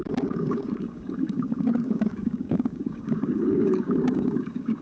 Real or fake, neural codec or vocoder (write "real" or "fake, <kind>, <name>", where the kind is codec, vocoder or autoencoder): fake, codec, DAC